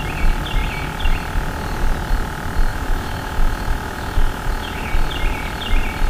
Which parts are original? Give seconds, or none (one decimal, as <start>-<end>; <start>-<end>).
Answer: 0.0-2.7; 4.9-6.1

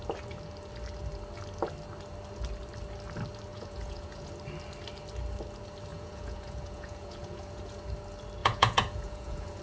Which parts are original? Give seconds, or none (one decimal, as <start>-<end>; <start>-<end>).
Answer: 0.0-3.5; 4.3-5.9; 7.8-8.4

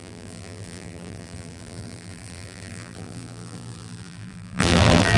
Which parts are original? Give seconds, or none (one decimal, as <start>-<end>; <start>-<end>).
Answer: none

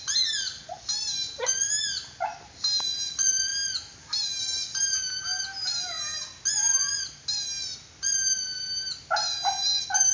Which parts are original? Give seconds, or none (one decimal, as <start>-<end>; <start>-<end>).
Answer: 0.0-10.1

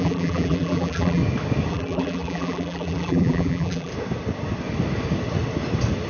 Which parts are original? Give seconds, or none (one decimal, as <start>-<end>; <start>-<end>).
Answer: 1.2-1.7; 3.9-6.1

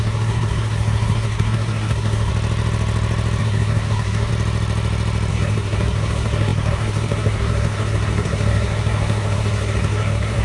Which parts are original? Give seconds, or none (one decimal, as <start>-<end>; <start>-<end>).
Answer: 2.3-3.4; 4.3-5.3

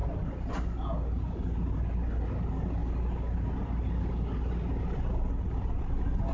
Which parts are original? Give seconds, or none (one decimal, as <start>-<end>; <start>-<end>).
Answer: 0.0-6.3

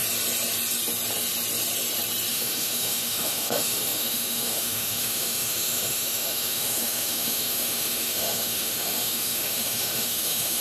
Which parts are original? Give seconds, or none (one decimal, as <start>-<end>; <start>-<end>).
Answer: 0.0-2.3